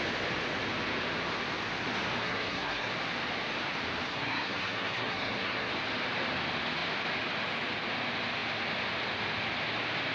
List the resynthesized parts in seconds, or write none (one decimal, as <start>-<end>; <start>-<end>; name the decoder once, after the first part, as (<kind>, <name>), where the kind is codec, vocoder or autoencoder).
2.2-2.9 (codec, SNAC); 4.1-5.7